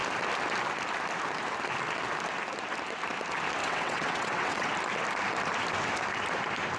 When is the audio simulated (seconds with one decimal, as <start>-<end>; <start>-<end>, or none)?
3.6-4.7